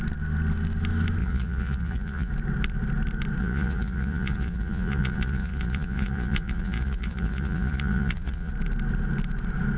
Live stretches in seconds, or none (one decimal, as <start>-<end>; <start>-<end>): 0.0-1.2; 2.3-3.4; 8.5-9.8